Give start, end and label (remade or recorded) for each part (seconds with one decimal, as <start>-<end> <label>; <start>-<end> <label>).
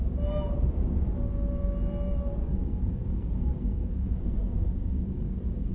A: 0.0-2.4 recorded; 2.4-5.7 remade